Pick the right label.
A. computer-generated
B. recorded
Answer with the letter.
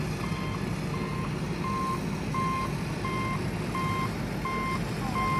B